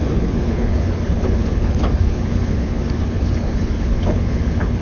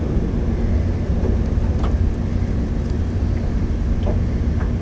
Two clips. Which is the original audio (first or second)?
second